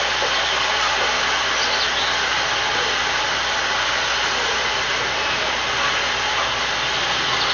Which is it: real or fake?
real